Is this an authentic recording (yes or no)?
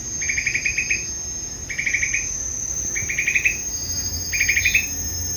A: yes